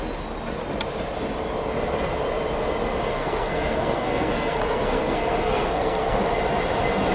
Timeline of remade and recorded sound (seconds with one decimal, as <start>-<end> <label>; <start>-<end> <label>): 0.0-3.1 recorded; 3.1-6.2 remade; 6.2-7.1 recorded